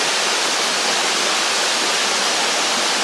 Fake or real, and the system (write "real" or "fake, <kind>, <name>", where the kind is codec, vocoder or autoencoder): real